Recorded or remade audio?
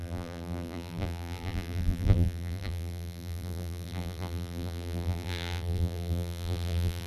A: remade